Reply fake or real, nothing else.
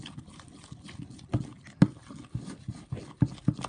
real